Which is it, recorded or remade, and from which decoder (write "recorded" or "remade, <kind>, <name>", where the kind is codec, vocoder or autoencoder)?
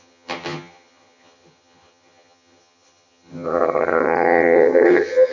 remade, vocoder, HiFi-GAN